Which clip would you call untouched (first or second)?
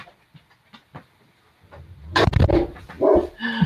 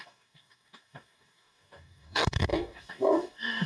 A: first